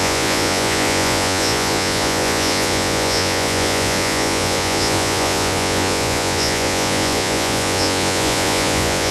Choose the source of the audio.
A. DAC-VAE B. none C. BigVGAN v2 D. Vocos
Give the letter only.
D